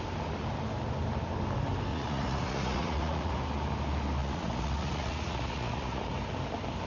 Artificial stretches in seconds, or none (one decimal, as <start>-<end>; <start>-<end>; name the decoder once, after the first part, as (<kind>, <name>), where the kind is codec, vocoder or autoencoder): 1.9-3.3 (vocoder, Vocos); 4.2-6.0